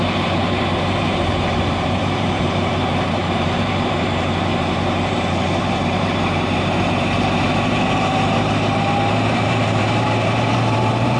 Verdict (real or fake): fake